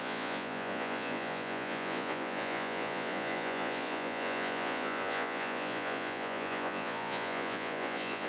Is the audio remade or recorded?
remade